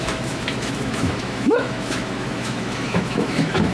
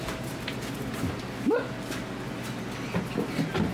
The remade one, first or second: first